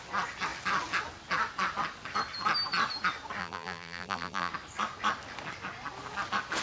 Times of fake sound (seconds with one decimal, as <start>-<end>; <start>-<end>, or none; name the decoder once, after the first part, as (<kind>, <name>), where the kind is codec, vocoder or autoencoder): 3.4-4.5 (vocoder, BigVGAN v2)